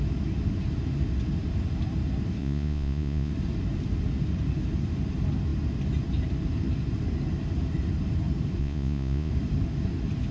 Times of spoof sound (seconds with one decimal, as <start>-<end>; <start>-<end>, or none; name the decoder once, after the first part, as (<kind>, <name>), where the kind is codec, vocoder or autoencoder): 2.4-3.3 (vocoder, Vocos); 8.6-9.3